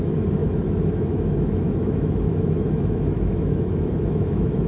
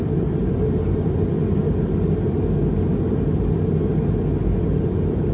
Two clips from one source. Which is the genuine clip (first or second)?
second